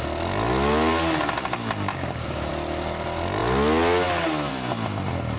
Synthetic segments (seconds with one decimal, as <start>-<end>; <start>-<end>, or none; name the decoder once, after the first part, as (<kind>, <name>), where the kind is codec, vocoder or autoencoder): 1.9-2.5 (codec, DAC)